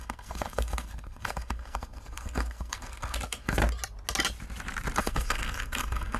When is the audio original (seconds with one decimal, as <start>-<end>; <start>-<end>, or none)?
3.6-5.0